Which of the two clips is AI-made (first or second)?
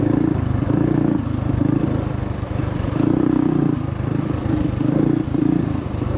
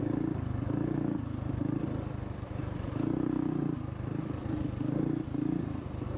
first